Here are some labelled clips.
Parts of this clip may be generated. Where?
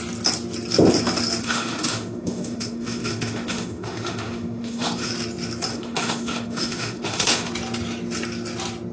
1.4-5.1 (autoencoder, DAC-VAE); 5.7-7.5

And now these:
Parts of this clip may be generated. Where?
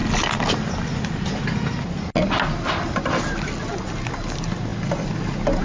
none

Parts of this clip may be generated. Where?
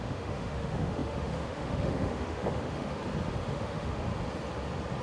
0.0-3.0 (autoencoder, DAC-VAE); 3.5-4.1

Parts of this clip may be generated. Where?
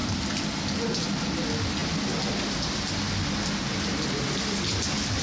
none